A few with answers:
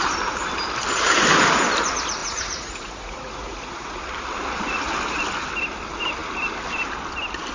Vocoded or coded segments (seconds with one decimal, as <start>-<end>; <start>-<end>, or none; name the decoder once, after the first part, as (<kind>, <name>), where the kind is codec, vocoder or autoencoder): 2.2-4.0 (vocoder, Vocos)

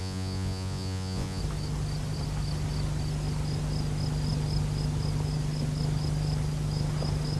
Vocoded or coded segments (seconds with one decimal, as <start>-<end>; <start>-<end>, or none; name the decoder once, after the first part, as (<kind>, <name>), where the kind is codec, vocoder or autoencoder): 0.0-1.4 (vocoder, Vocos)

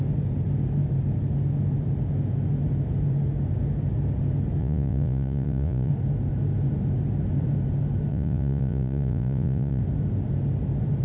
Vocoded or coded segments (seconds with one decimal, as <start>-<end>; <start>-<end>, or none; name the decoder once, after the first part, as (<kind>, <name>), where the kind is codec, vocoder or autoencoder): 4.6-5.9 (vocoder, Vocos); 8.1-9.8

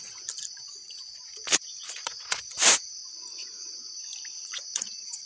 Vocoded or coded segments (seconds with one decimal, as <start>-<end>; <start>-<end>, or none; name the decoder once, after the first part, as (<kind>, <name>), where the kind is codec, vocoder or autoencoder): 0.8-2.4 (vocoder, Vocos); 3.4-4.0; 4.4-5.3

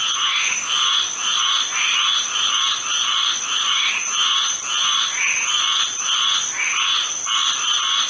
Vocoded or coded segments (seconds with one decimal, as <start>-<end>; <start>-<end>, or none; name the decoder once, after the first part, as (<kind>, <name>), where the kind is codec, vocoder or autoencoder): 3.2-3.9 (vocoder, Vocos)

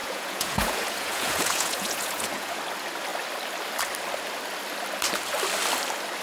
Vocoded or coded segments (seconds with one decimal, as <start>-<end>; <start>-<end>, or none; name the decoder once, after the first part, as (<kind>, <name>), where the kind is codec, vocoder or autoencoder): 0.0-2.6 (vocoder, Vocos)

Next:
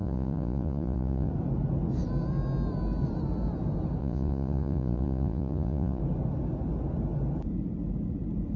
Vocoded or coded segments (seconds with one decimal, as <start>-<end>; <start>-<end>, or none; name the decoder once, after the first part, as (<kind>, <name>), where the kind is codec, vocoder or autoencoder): 0.0-1.3 (vocoder, Vocos); 4.0-6.0